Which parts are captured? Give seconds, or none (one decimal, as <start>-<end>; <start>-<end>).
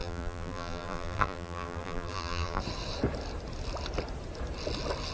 2.6-5.1